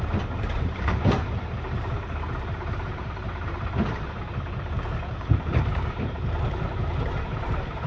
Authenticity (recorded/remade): remade